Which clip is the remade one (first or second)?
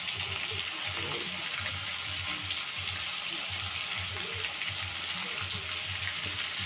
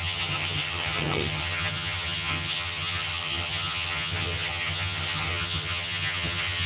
second